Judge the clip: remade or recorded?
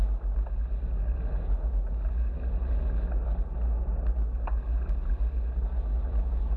recorded